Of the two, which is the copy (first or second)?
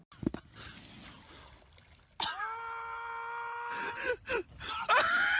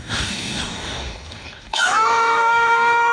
second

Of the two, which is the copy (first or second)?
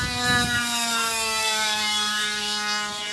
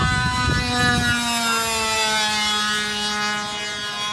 first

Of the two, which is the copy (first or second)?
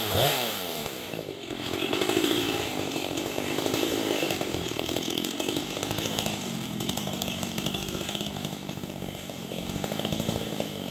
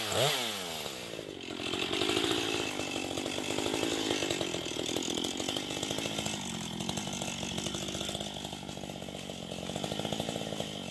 first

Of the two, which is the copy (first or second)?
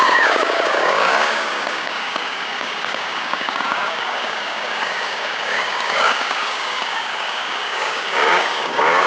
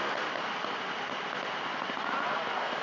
first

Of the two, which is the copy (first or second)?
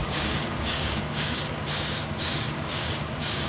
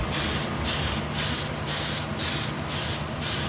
first